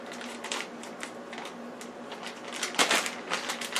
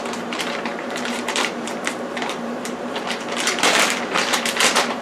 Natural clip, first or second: first